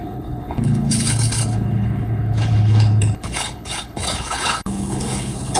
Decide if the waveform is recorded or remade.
remade